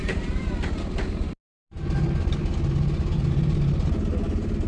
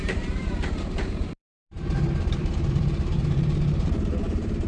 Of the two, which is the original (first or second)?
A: first